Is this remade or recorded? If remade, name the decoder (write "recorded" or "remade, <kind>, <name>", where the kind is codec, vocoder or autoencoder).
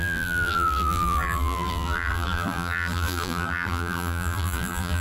remade, vocoder, BigVGAN v2